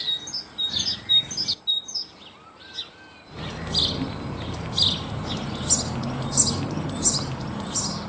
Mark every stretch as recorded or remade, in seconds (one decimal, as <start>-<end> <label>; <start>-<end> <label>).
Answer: 0.0-8.1 recorded